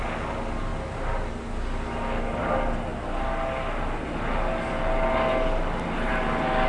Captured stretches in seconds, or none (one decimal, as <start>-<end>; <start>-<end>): 0.0-6.7